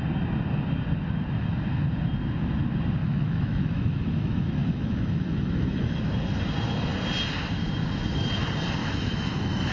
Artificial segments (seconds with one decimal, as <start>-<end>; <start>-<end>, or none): 3.0-6.0; 8.8-9.7